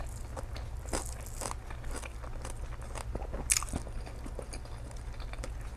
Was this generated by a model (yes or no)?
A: no